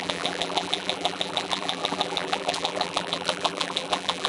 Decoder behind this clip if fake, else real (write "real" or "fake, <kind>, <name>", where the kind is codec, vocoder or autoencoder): fake, vocoder, BigVGAN v2